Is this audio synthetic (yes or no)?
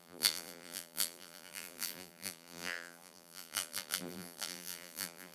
yes